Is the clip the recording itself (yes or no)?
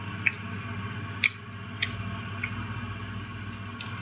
yes